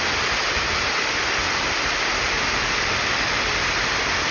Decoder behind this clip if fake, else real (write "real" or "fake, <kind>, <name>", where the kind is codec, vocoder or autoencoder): real